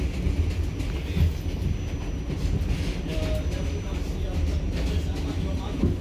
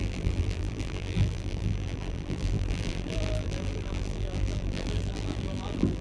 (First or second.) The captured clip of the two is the first